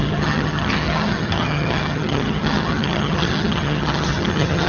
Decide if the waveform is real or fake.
fake